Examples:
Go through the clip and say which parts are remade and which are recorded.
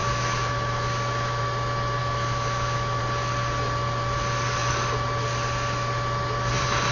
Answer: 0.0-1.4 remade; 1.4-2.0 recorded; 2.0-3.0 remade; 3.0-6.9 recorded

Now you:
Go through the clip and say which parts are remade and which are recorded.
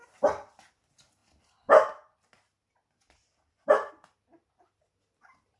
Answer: 0.0-5.6 recorded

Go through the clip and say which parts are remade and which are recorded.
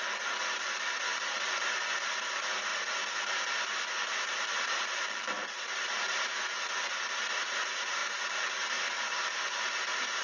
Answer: 0.0-10.2 recorded